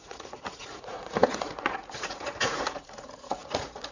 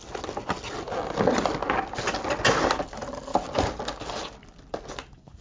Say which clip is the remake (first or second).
first